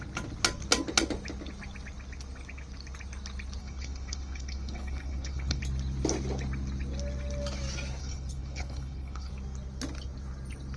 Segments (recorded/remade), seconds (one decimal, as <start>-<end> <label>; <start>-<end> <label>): 0.0-3.6 recorded; 3.6-5.6 remade; 5.6-8.0 recorded; 8.0-9.3 remade; 9.3-10.8 recorded